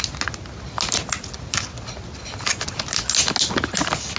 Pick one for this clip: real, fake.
real